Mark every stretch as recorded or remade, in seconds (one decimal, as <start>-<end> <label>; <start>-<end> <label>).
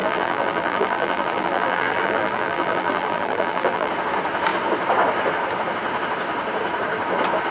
0.0-3.9 remade; 3.9-7.5 recorded